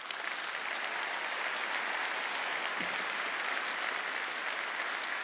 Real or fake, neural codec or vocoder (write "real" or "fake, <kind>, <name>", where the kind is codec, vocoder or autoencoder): real